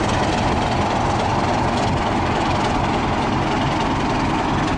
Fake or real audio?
real